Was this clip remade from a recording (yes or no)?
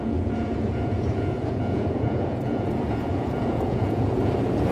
yes